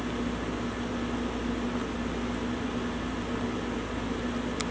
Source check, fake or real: real